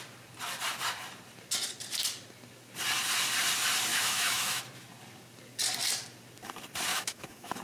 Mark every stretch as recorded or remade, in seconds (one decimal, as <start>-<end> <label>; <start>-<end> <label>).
0.0-3.9 recorded; 3.9-4.6 remade; 4.6-6.9 recorded; 6.9-7.6 remade